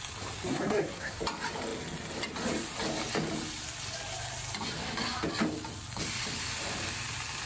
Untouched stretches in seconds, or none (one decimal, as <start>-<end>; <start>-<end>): 0.0-0.5; 1.2-7.5